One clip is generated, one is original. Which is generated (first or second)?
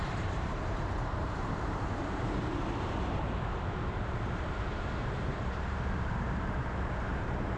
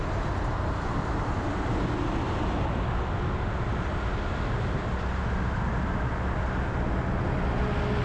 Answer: first